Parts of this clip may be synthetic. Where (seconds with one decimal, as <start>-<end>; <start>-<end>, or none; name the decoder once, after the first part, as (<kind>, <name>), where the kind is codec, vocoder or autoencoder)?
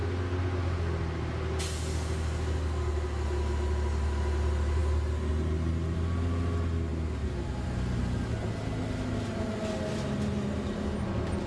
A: none